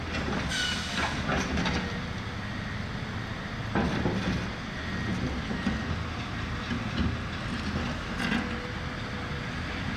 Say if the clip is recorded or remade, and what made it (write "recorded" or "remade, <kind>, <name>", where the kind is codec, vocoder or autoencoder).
recorded